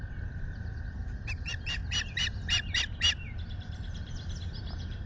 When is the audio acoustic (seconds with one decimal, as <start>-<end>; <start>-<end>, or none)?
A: 0.0-5.1